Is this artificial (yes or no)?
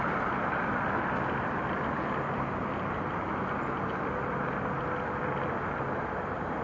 no